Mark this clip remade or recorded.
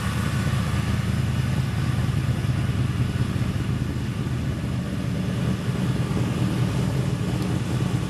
recorded